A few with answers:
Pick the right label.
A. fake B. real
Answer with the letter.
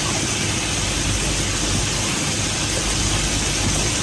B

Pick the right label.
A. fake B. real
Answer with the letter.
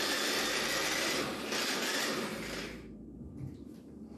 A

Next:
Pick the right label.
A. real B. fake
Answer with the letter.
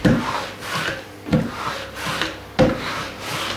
A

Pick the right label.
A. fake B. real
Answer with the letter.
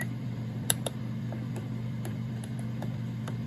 A